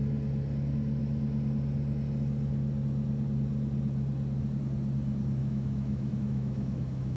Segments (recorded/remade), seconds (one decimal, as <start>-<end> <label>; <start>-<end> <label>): 0.0-5.4 recorded; 5.4-7.2 remade